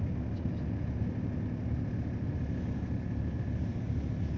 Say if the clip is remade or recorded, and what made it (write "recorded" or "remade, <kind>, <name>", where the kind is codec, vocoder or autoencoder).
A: recorded